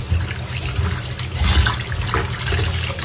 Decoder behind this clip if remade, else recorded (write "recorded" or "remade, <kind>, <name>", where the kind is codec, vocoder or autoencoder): recorded